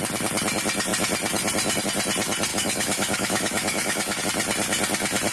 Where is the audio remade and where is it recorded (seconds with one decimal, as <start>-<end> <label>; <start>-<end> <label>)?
0.0-2.5 recorded; 2.5-4.2 remade; 4.2-5.3 recorded